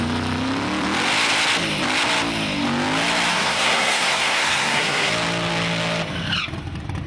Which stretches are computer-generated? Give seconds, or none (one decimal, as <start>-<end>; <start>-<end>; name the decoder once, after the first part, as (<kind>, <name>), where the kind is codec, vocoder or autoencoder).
3.3-5.1 (codec, SNAC)